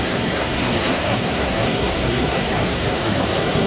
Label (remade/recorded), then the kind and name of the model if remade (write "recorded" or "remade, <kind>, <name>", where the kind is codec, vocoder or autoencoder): remade, codec, SNAC